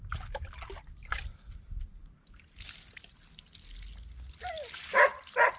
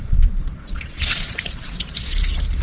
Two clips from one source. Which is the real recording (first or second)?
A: first